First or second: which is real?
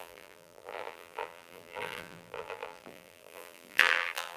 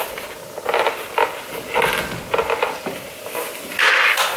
second